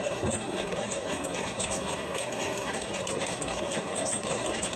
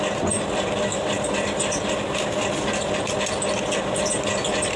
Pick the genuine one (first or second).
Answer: second